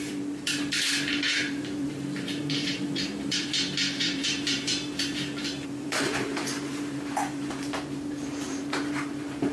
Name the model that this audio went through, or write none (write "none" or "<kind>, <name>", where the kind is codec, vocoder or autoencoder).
vocoder, BigVGAN v2